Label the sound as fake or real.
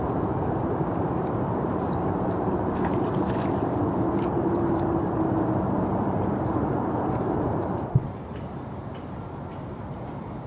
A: fake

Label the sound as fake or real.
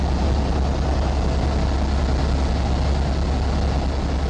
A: real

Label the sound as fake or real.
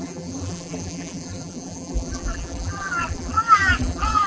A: fake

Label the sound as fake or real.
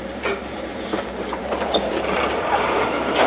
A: fake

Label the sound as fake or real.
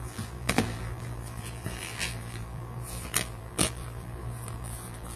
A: fake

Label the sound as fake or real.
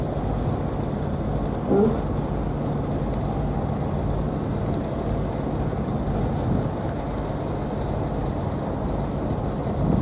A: real